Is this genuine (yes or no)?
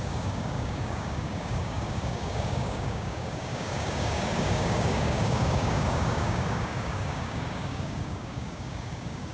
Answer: no